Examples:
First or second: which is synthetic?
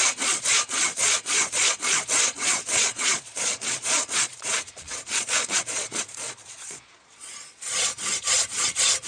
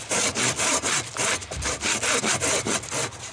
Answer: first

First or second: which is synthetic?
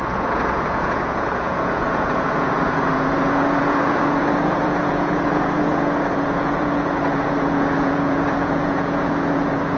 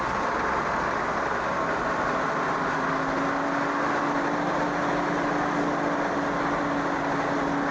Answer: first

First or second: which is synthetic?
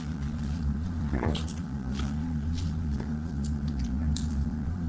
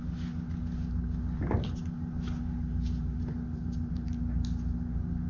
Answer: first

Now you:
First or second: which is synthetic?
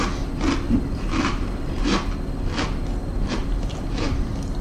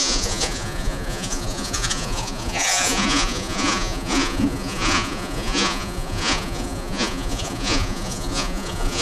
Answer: second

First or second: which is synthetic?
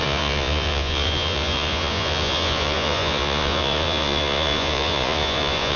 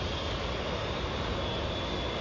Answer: first